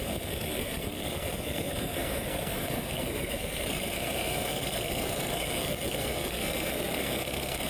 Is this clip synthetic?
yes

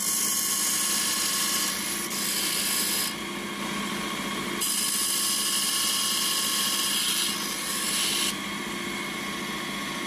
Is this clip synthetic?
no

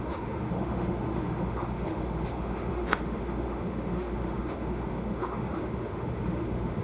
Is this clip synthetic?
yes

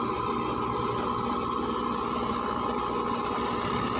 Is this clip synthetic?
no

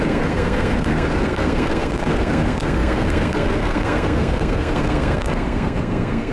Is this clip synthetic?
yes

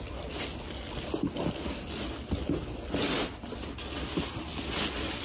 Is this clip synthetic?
no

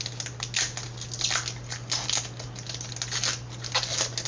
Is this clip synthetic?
no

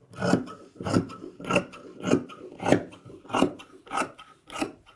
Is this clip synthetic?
yes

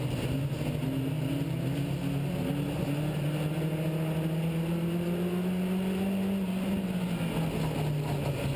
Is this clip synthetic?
no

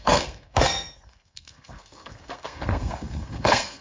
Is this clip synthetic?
yes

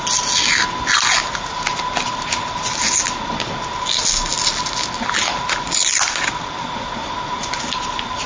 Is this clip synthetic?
no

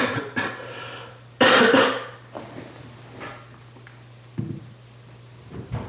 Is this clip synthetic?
no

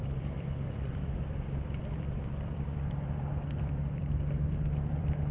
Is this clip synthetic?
yes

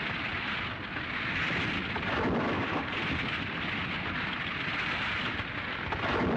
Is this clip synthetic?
no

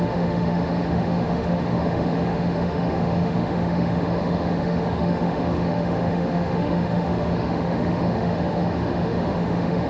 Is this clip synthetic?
yes